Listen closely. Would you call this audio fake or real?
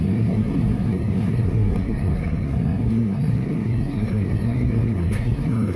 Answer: fake